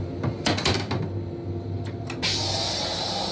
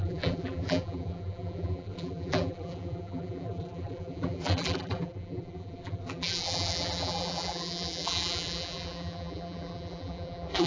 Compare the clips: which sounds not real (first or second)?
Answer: second